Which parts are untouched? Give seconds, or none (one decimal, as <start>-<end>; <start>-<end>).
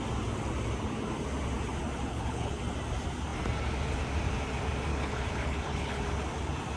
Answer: 0.0-2.1; 2.6-4.9; 6.0-6.8